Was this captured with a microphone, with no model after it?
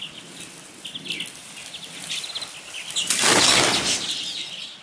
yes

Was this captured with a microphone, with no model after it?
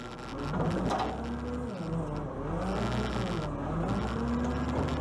yes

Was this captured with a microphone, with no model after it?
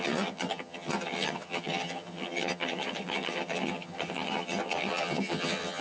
no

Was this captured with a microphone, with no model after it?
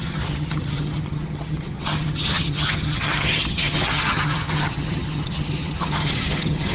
no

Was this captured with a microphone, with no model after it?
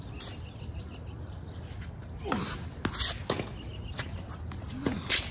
yes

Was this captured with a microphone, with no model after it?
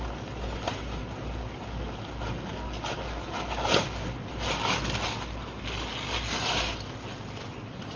yes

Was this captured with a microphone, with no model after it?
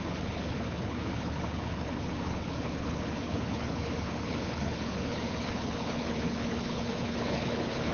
no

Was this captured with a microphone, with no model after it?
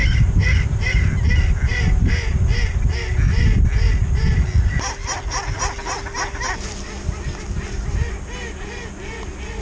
yes